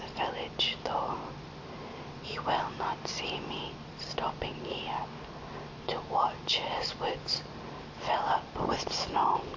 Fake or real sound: real